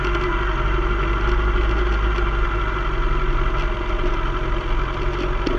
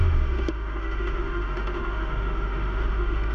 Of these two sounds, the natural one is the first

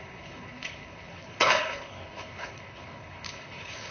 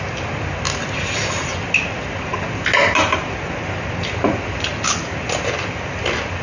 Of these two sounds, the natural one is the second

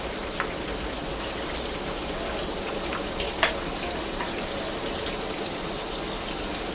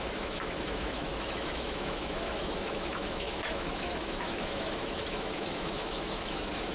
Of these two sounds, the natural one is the first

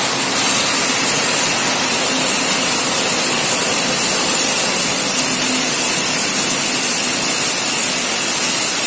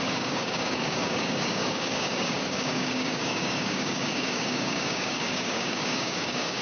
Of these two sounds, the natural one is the first